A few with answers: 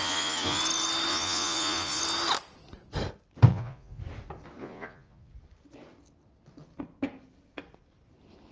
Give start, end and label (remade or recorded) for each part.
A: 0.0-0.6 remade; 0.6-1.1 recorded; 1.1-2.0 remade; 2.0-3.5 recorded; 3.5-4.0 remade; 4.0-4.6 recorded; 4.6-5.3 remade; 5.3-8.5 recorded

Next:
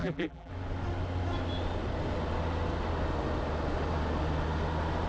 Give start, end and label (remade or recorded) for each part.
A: 0.0-0.5 remade; 0.5-5.1 recorded